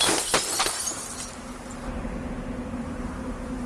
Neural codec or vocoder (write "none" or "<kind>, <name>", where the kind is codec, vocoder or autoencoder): none